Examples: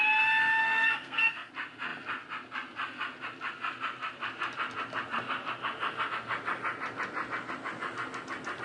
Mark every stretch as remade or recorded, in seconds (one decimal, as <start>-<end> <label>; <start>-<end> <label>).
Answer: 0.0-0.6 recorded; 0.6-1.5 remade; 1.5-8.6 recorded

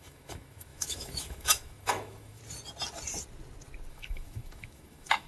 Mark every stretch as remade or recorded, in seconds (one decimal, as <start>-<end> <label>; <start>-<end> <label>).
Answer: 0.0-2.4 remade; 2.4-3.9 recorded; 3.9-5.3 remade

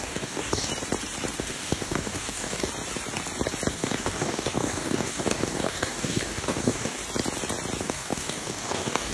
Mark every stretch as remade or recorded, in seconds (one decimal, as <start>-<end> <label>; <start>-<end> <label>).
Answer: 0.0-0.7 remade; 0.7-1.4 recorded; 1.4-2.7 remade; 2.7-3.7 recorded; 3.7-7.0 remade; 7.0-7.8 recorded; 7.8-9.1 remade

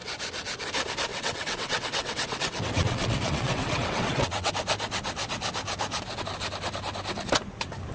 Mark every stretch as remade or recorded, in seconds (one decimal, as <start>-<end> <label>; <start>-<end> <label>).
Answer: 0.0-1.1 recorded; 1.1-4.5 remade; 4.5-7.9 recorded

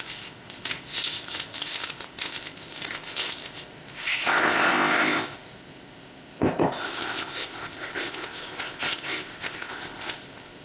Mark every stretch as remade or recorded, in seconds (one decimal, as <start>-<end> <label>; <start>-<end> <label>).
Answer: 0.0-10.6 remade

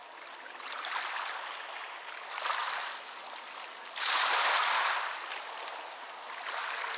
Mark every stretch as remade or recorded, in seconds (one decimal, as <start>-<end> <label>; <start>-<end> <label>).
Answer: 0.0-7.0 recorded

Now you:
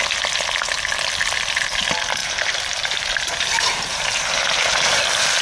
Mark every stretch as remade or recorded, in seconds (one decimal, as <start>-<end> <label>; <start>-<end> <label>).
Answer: 0.0-2.2 recorded; 2.2-5.0 remade; 5.0-5.4 recorded

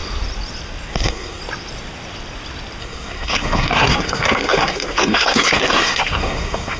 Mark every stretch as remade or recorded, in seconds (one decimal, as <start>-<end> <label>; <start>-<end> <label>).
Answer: 0.0-0.9 recorded; 0.9-1.4 remade; 1.4-2.8 recorded; 2.8-6.8 remade